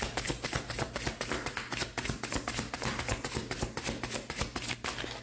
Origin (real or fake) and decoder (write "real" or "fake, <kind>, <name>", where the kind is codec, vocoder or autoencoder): real